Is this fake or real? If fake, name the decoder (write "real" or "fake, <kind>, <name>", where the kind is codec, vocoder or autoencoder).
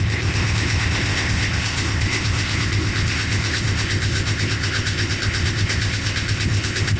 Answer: fake, codec, ZipCodec